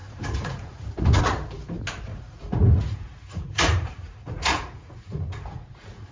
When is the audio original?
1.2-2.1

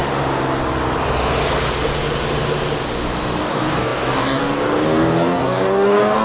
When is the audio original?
0.0-3.4

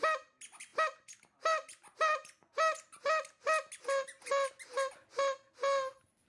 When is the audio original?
0.0-6.3